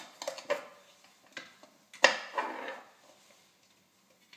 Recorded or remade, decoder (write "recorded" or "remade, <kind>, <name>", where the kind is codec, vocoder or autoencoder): recorded